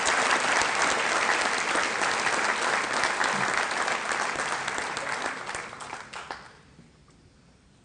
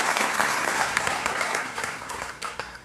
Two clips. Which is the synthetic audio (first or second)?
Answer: second